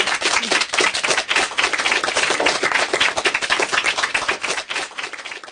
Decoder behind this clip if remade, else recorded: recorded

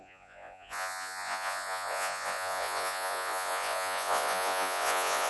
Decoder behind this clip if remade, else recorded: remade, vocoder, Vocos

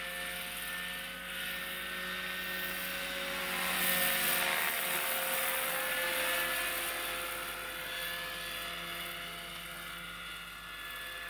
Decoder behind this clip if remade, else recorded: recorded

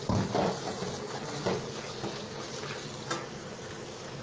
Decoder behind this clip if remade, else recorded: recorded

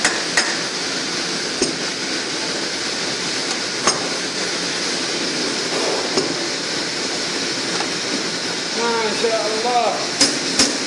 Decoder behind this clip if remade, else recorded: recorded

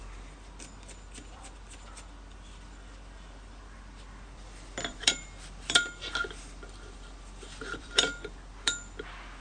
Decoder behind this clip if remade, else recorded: remade, vocoder, BigVGAN v2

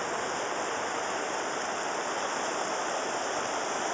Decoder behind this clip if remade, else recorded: recorded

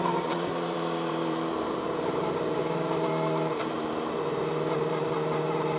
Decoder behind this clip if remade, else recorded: remade, vocoder, BigVGAN v2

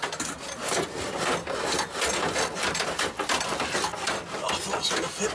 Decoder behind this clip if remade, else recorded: recorded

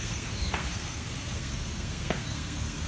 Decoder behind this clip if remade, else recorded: remade, codec, SNAC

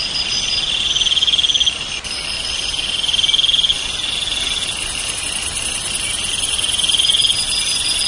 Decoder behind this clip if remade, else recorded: recorded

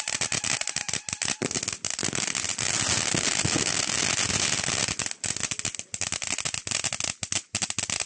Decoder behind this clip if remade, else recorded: recorded